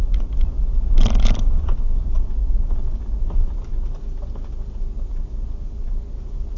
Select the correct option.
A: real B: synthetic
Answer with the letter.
A